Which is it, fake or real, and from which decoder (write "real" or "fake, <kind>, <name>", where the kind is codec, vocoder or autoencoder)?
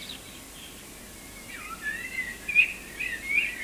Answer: real